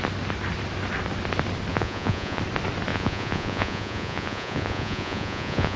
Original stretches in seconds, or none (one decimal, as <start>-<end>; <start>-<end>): 0.0-1.7; 2.4-2.9